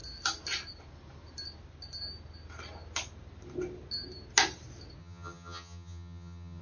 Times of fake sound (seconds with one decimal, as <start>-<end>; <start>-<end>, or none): 5.0-6.6